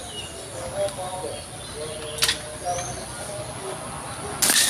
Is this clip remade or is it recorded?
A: recorded